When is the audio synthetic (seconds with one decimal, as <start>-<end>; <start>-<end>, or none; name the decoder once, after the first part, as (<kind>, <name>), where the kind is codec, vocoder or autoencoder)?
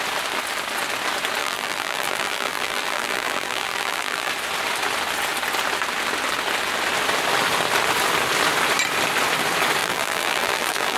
1.4-4.3 (vocoder, BigVGAN v2); 9.8-11.0